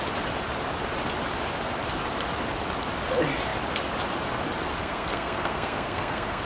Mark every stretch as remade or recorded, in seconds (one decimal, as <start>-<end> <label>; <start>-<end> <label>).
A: 0.0-4.8 recorded; 4.8-6.4 remade